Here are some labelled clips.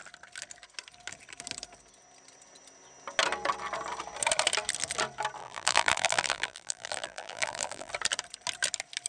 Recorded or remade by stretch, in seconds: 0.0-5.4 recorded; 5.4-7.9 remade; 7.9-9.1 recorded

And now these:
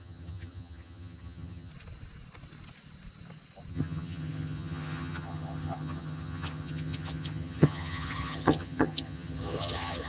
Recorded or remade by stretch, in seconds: 0.0-1.7 remade; 1.7-3.7 recorded; 3.7-10.1 remade

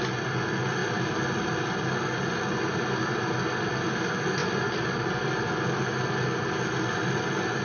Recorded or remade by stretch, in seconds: 0.0-7.6 recorded

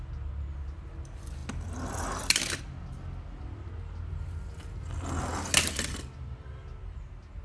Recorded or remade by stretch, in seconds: 0.0-7.4 recorded

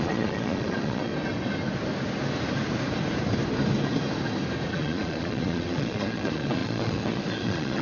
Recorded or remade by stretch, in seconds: 0.0-1.1 remade; 1.1-4.7 recorded; 4.7-7.8 remade

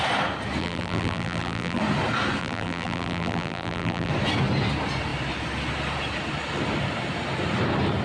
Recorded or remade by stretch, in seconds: 0.0-0.6 recorded; 0.6-1.8 remade; 1.8-2.4 recorded; 2.4-4.1 remade; 4.1-8.0 recorded

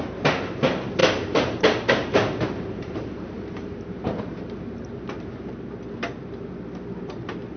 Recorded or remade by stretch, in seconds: 0.0-1.0 recorded; 1.0-5.6 remade; 5.6-7.6 recorded